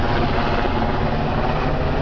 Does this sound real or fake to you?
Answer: real